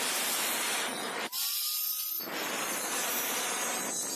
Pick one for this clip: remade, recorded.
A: recorded